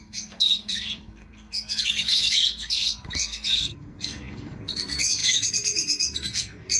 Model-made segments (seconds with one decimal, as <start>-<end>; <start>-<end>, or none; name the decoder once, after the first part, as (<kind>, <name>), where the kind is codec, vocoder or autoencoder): 0.0-6.8 (codec, SNAC)